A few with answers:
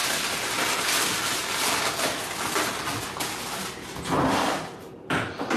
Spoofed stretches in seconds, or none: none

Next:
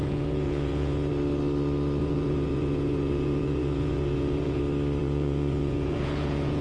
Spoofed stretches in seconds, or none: 0.0-1.1 (vocoder, Vocos); 2.0-4.6; 5.0-6.6

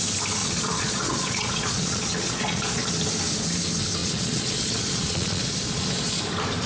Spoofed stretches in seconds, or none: 0.4-2.9 (vocoder, Vocos); 4.0-6.2

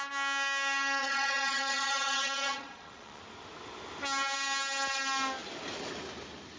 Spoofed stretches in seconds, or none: 1.0-3.2 (vocoder, Vocos)

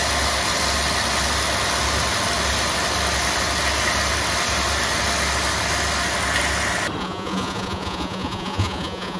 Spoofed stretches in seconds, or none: 7.0-9.2 (vocoder, Vocos)

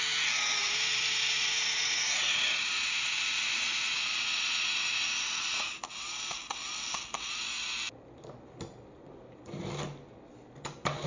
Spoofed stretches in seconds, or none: 0.6-5.8 (vocoder, Vocos)

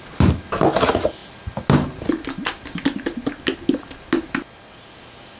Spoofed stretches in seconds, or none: none

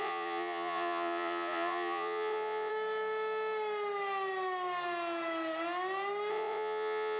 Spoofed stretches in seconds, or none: 0.0-2.7 (vocoder, Vocos); 6.3-7.2